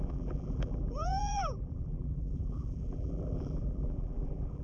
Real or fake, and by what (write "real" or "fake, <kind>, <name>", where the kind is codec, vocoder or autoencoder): fake, vocoder, BigVGAN v2